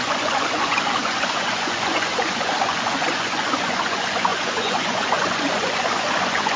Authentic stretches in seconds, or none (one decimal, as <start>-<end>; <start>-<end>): none